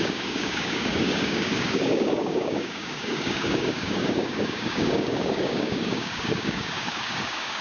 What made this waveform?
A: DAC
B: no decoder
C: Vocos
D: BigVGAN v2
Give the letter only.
A